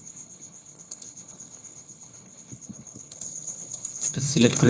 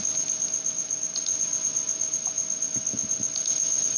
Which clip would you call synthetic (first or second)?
first